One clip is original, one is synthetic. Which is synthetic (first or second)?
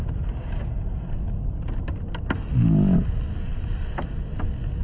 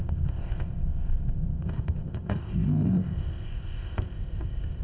second